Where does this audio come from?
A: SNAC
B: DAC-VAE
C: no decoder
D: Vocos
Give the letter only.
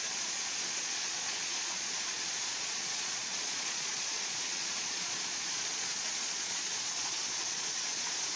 D